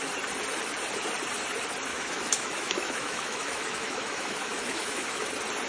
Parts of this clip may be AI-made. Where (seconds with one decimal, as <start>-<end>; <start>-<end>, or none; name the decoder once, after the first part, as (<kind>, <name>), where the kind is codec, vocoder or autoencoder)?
1.9-5.3 (autoencoder, DAC-VAE)